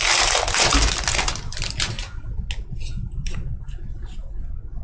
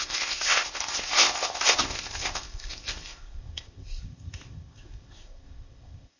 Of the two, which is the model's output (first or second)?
second